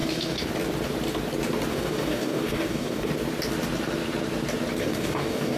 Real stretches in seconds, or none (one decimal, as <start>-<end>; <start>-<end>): 0.5-1.7; 3.1-4.8